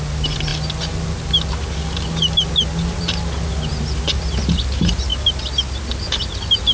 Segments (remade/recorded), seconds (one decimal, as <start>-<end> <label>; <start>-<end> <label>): 0.0-6.7 recorded